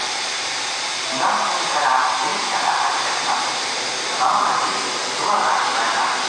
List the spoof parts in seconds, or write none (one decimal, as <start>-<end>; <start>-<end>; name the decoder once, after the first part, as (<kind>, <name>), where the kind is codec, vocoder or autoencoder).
0.0-1.2 (vocoder, BigVGAN v2); 2.3-5.3